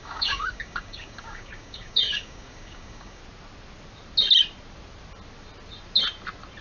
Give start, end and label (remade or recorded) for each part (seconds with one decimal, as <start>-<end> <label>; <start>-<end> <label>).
0.0-3.2 remade; 3.2-6.6 recorded